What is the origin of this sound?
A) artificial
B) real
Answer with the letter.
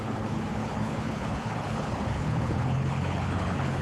A